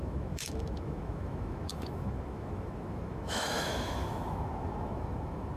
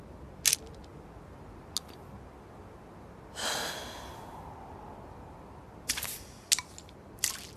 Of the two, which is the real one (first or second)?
second